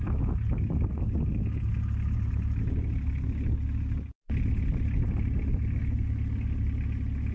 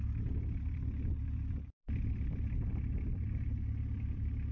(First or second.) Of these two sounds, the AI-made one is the second